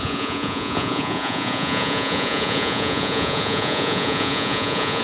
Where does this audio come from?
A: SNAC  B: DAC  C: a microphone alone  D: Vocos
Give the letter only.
D